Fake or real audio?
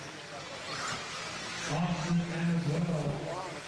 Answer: real